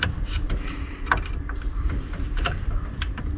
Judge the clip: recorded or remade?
remade